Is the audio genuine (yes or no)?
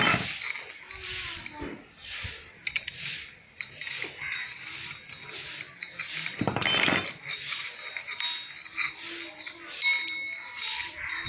yes